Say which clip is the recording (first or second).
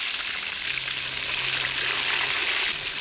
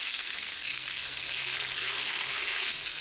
first